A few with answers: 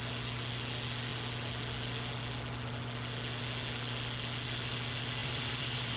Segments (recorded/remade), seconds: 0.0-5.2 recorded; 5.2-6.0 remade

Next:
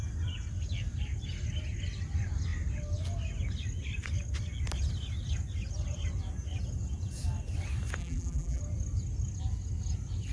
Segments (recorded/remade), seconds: 0.0-8.0 recorded; 8.0-8.6 remade; 8.6-10.3 recorded

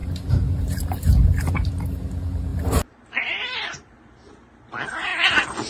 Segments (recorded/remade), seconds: 0.0-1.7 remade; 1.7-2.5 recorded; 2.5-4.0 remade; 4.0-5.7 recorded

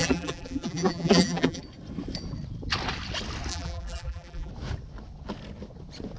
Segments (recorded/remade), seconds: 0.0-1.6 remade; 1.6-3.5 recorded; 3.5-4.5 remade; 4.5-6.2 recorded

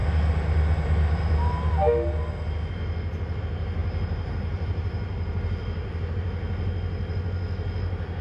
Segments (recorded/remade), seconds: 0.0-3.8 recorded; 3.8-6.1 remade; 6.1-8.2 recorded

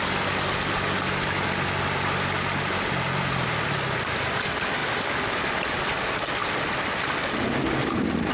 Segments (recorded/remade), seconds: 0.0-8.3 recorded

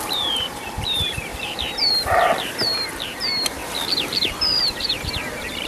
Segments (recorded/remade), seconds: 0.0-3.6 remade; 3.6-4.6 recorded; 4.6-5.7 remade

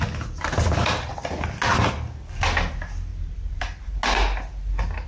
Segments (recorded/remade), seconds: 0.0-3.1 recorded; 3.1-3.9 remade; 3.9-5.1 recorded